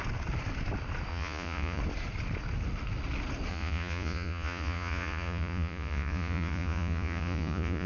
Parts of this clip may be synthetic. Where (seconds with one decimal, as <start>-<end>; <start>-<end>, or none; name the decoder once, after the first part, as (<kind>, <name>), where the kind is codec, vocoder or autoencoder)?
1.1-1.8 (vocoder, Vocos); 3.5-7.9